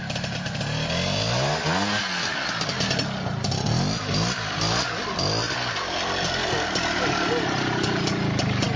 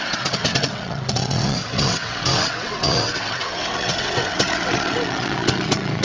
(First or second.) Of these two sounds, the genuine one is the first